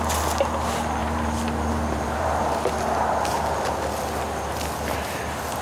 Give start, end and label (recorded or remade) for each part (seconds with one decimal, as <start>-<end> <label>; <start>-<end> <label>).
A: 0.0-1.0 recorded; 1.0-2.4 remade; 2.4-5.6 recorded